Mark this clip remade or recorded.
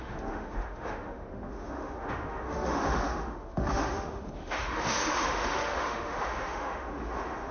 remade